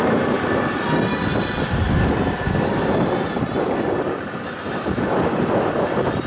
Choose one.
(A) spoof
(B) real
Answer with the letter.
B